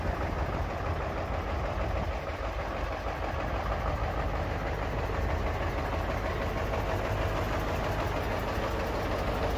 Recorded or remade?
recorded